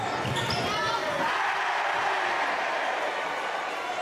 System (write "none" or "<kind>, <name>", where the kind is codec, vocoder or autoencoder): none